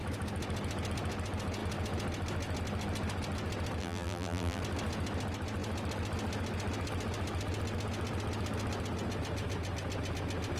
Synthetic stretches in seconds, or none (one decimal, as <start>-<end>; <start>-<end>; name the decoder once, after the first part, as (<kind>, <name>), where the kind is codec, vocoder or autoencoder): 3.8-4.6 (vocoder, BigVGAN v2)